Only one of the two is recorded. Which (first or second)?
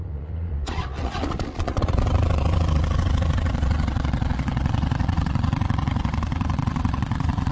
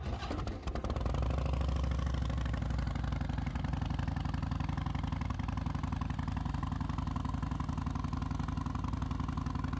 second